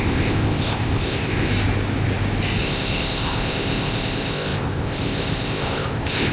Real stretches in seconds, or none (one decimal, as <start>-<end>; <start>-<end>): 1.5-2.6

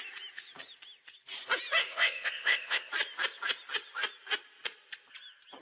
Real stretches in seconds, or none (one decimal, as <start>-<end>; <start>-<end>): 0.0-1.8; 2.9-5.6

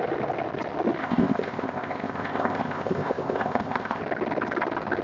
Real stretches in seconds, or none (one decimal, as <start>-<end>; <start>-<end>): 0.0-1.0; 4.0-5.0

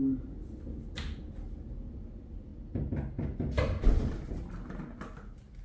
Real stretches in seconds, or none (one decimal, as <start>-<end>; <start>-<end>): 0.0-5.6

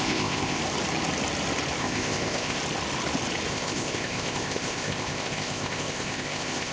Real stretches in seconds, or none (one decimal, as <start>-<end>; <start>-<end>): 0.6-1.8; 2.6-3.5

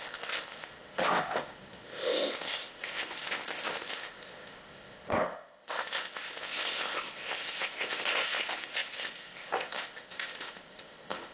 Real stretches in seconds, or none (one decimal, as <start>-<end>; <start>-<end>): none